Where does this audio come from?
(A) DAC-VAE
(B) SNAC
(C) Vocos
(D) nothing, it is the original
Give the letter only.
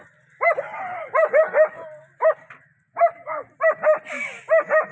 D